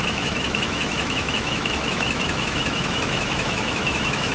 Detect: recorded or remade remade